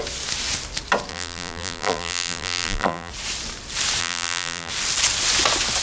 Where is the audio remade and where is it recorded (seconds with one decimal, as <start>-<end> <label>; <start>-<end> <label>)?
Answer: 0.0-1.1 recorded; 1.1-3.1 remade; 3.1-4.0 recorded; 4.0-4.7 remade; 4.7-5.8 recorded